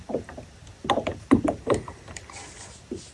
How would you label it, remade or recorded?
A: recorded